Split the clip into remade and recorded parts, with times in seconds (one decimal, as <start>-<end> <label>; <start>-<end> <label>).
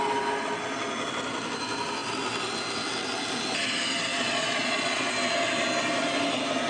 0.0-4.1 recorded; 4.1-5.1 remade; 5.1-6.7 recorded